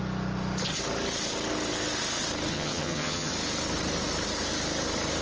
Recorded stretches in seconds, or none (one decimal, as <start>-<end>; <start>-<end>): 0.0-2.5; 3.3-5.2